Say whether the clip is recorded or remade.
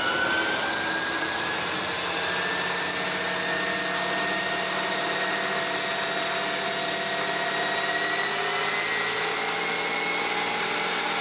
recorded